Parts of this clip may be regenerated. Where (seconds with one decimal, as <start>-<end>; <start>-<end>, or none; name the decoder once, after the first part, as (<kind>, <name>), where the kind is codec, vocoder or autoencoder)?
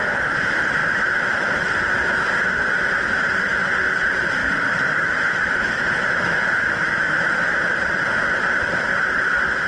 0.8-1.5 (autoencoder, DAC-VAE); 4.4-7.3